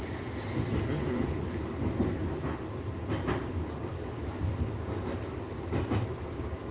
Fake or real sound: real